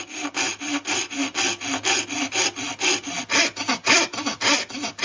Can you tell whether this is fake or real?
real